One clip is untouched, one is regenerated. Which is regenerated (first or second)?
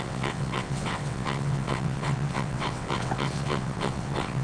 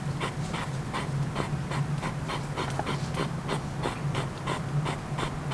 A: first